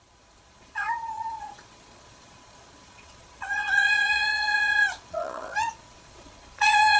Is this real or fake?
fake